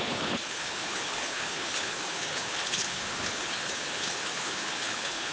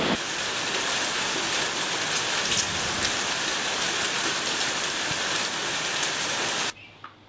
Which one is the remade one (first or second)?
first